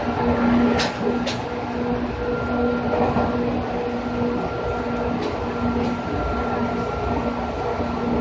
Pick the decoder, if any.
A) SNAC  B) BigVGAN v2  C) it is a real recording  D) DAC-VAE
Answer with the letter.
C